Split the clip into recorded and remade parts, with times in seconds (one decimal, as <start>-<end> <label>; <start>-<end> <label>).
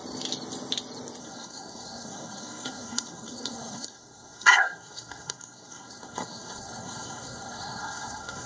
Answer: 0.0-1.2 recorded; 1.2-8.5 remade